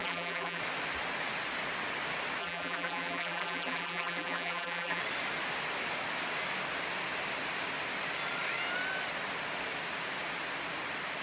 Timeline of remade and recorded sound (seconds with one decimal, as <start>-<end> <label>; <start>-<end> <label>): 0.0-0.6 remade; 0.6-2.4 recorded; 2.4-5.0 remade; 5.0-11.2 recorded